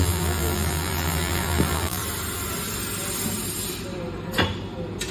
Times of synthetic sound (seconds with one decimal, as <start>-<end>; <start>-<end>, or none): 0.0-2.0